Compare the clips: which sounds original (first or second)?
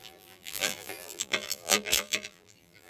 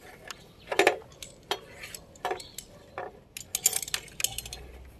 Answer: second